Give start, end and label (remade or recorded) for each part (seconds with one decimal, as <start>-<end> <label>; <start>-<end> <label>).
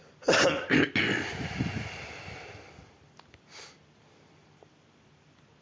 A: 0.0-5.6 recorded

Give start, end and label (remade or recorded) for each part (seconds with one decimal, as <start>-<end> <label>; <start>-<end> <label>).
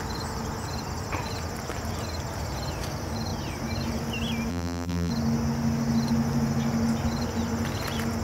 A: 0.0-4.5 recorded; 4.5-5.1 remade; 5.1-8.2 recorded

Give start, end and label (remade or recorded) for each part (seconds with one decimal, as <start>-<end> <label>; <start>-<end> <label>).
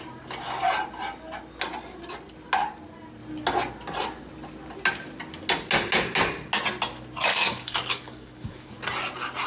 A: 0.0-7.3 recorded; 7.3-8.8 remade; 8.8-9.5 recorded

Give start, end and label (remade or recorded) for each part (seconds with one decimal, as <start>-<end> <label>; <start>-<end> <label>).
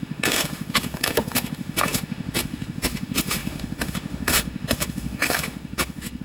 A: 0.0-6.2 remade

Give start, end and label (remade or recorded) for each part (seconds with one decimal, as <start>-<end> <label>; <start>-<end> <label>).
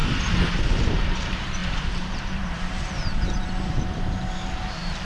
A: 0.0-0.9 recorded; 0.9-5.0 remade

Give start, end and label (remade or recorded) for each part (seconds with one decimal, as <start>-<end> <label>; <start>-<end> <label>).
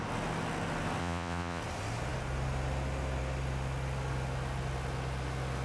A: 0.0-1.0 recorded; 1.0-1.6 remade; 1.6-5.6 recorded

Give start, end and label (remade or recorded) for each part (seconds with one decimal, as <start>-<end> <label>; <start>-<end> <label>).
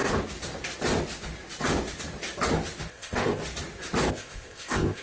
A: 0.0-2.9 recorded; 2.9-3.4 remade; 3.4-4.1 recorded; 4.1-5.0 remade